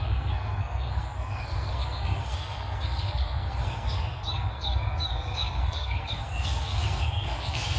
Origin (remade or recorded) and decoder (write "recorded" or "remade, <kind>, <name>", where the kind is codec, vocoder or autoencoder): remade, codec, SNAC